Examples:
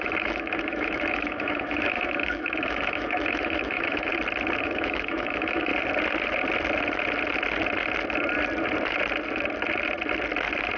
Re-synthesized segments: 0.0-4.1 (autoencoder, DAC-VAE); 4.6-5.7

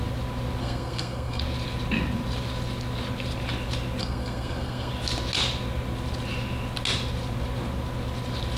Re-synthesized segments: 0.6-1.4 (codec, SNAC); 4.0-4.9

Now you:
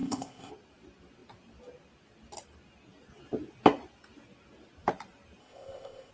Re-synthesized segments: 0.0-0.5 (codec, ZipCodec); 5.4-6.1

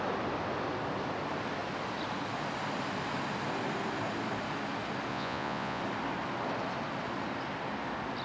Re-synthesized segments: 5.1-5.8 (vocoder, Vocos)

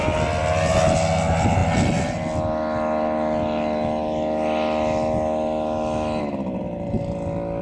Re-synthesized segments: none